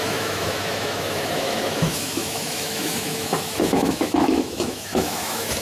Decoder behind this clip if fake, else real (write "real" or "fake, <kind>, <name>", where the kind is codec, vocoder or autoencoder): fake, autoencoder, DAC-VAE